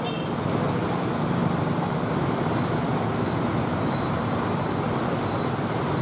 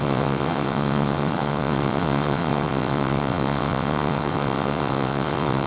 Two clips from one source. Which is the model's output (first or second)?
second